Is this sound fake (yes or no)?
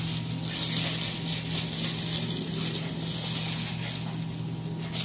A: no